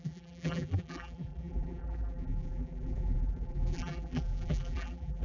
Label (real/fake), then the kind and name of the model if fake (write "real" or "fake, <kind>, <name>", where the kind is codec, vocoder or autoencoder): fake, vocoder, BigVGAN v2